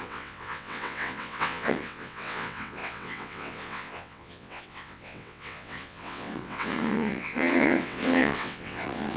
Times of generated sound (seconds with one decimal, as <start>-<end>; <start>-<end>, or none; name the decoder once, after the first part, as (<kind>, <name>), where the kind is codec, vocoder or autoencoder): 0.0-9.2 (vocoder, WaveNeXt)